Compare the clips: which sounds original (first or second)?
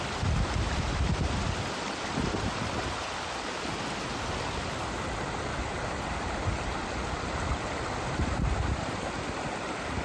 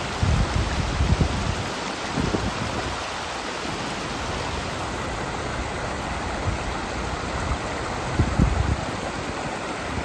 second